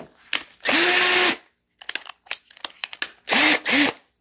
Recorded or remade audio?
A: recorded